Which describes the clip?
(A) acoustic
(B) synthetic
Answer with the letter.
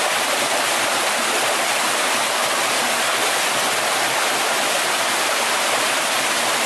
A